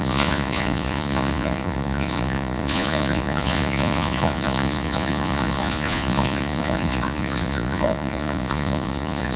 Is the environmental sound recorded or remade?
remade